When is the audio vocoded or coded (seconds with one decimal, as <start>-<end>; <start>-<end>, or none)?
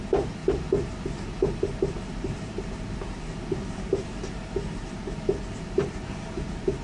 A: none